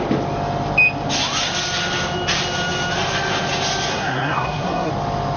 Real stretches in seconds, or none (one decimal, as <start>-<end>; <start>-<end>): 0.0-3.9; 4.9-5.4